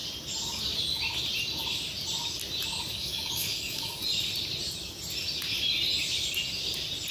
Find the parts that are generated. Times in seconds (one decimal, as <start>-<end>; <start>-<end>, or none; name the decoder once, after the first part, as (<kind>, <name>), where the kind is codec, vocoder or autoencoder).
2.9-4.0 (codec, DAC)